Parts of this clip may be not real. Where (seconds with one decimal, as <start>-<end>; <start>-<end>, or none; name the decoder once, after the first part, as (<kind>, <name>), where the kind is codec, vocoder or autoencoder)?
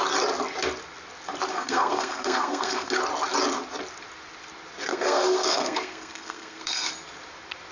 1.5-2.9 (codec, SNAC); 4.9-6.9